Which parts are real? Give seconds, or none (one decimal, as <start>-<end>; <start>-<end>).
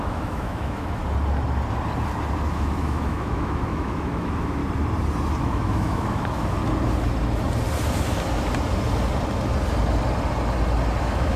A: 1.0-2.5; 4.6-5.4; 6.6-11.0